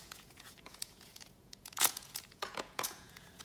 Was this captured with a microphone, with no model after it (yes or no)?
no